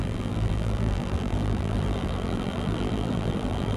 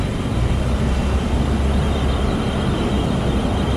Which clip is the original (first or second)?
second